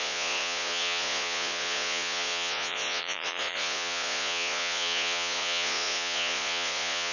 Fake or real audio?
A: fake